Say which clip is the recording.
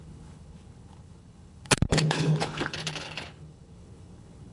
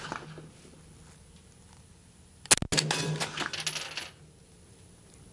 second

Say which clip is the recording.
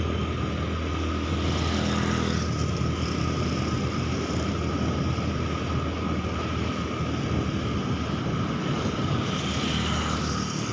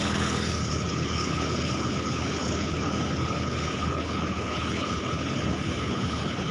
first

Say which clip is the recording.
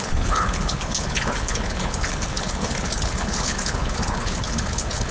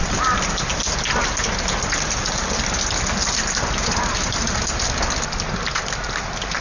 second